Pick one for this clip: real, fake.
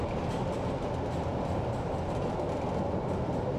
real